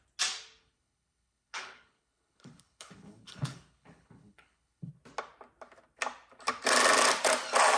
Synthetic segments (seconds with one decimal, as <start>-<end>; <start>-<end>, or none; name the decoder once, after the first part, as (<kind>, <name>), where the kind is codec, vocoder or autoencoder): 0.6-4.9 (codec, HILCodec)